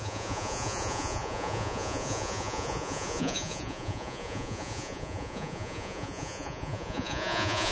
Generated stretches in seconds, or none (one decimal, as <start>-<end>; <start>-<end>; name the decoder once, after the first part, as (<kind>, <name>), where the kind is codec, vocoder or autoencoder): 0.0-7.7 (vocoder, Vocos)